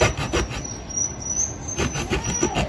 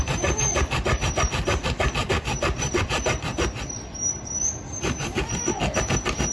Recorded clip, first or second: first